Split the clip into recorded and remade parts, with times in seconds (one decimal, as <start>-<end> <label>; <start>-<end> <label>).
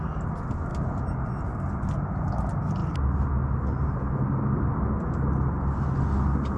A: 0.0-6.6 recorded